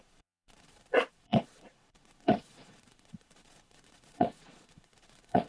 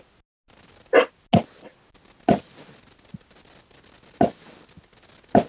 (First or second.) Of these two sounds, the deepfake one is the first